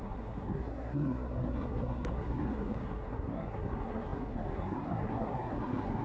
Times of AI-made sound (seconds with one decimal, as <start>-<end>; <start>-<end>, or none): 0.0-6.0